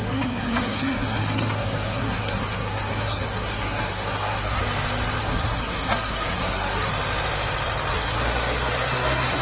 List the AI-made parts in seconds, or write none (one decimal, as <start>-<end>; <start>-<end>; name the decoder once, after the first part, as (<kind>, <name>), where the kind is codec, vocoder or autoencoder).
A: 0.0-4.6 (codec, SNAC); 5.2-6.9; 7.9-9.4